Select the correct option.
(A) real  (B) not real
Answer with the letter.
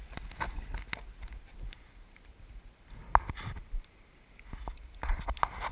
A